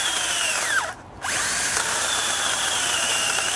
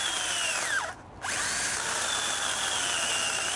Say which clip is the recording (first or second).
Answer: second